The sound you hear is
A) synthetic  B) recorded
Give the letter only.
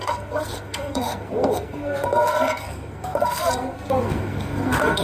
A